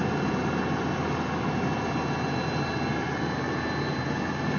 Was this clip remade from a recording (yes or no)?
no